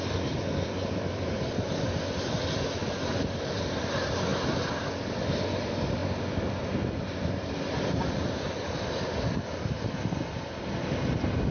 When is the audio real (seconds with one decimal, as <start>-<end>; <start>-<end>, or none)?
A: 2.8-3.7